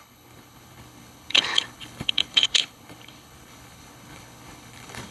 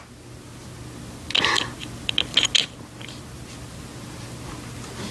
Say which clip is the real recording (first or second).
second